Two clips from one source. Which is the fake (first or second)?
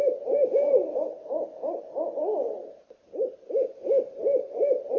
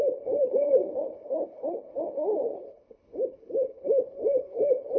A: second